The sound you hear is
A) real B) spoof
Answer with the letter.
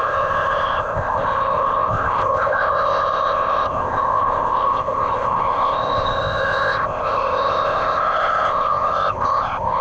B